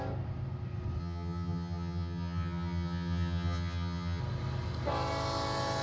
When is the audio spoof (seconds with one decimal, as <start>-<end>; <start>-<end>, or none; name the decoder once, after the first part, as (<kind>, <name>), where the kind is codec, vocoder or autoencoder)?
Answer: 1.0-4.2 (vocoder, HiFi-GAN)